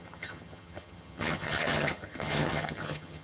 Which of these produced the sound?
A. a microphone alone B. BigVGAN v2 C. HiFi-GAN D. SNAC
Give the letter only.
C